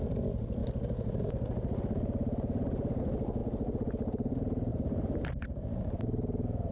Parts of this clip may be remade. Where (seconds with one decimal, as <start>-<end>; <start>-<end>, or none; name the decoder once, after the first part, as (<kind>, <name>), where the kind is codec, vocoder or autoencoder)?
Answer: 4.7-6.7 (vocoder, BigVGAN v2)